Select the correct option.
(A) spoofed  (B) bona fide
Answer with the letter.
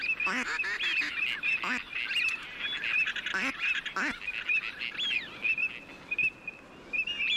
B